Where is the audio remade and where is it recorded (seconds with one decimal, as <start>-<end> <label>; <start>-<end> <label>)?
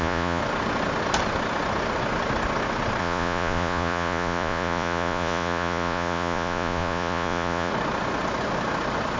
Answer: 0.0-0.4 remade; 0.4-3.0 recorded; 3.0-7.7 remade; 7.7-9.2 recorded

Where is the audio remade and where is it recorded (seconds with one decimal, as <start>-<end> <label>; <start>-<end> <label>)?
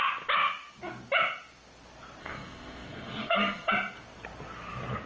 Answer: 0.0-2.2 recorded; 2.2-3.7 remade; 3.7-5.1 recorded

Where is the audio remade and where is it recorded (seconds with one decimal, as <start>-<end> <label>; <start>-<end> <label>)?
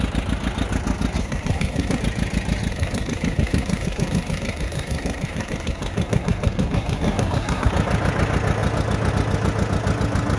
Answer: 0.0-1.2 recorded; 1.2-2.0 remade; 2.0-2.7 recorded; 2.7-7.7 remade; 7.7-10.4 recorded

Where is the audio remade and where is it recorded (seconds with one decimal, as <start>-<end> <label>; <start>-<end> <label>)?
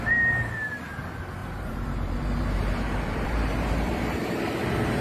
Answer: 0.0-1.4 recorded; 1.4-4.4 remade; 4.4-5.0 recorded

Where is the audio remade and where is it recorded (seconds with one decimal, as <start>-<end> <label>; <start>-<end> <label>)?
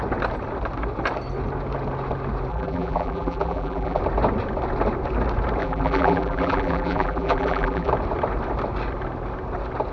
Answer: 0.0-2.5 recorded; 2.5-4.0 remade; 4.0-5.6 recorded; 5.6-7.9 remade; 7.9-9.9 recorded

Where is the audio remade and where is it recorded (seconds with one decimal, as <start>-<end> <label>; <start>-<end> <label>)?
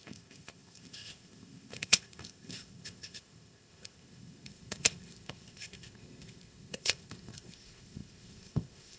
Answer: 0.0-9.0 remade